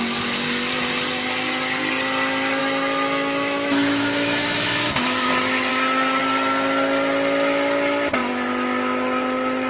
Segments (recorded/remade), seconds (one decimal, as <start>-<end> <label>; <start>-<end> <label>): 0.0-2.6 recorded; 2.6-5.3 remade; 5.3-5.7 recorded; 5.7-6.2 remade; 6.2-9.7 recorded